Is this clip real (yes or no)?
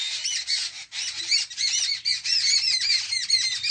yes